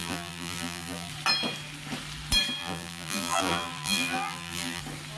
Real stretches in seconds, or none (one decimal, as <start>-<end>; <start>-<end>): 1.1-2.6; 4.8-5.2